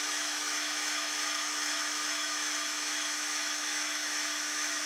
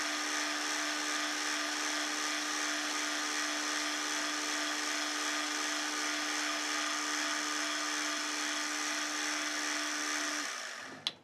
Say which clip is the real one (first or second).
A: second